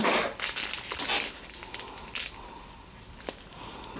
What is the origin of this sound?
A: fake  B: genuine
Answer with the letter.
B